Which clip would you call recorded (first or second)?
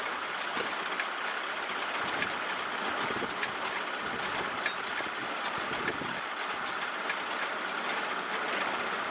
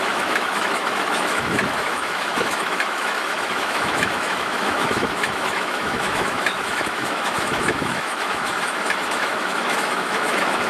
first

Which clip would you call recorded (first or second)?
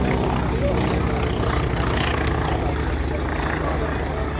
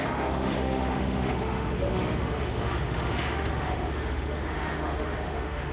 first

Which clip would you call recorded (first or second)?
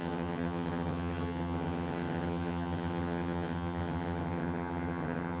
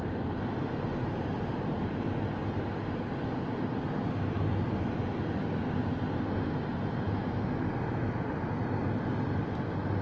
second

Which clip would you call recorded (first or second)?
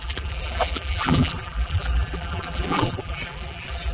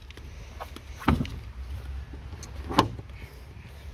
second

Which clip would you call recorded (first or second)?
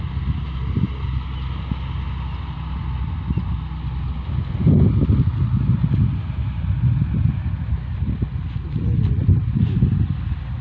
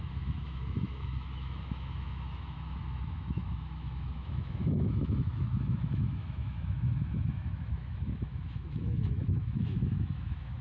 first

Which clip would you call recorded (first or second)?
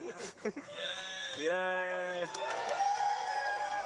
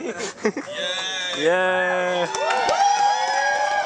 second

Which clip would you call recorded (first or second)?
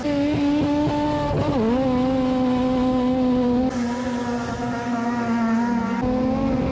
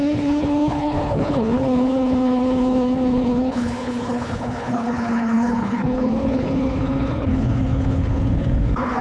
first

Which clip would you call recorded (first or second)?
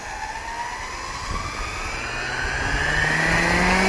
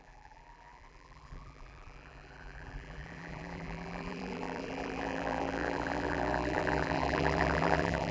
first